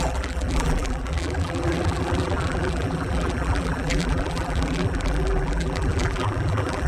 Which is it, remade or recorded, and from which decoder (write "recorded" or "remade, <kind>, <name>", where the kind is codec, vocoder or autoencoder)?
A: remade, vocoder, BigVGAN v2